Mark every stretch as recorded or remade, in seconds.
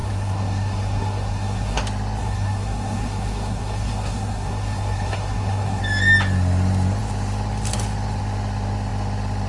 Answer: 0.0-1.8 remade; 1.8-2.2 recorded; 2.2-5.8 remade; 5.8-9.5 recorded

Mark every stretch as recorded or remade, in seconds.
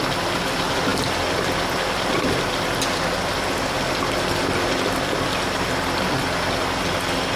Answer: 0.0-7.4 recorded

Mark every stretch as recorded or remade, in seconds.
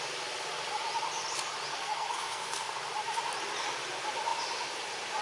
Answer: 0.0-1.7 recorded; 1.7-2.7 remade; 2.7-5.2 recorded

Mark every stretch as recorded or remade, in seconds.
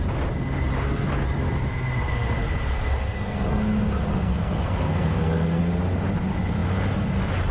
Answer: 0.0-3.1 recorded; 3.1-3.6 remade; 3.6-4.1 recorded; 4.1-5.6 remade; 5.6-7.5 recorded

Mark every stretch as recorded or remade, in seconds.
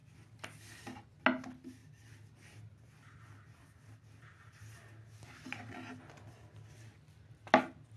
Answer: 0.0-8.0 recorded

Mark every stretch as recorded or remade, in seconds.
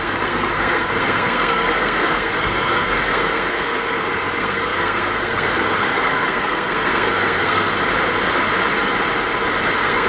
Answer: 0.0-7.7 remade; 7.7-9.7 recorded; 9.7-10.1 remade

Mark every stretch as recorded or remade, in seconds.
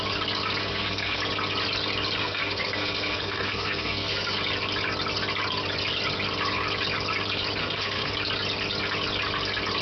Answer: 0.0-0.6 recorded; 0.6-1.2 remade; 1.2-2.2 recorded; 2.2-4.4 remade; 4.4-7.6 recorded; 7.6-8.1 remade; 8.1-9.8 recorded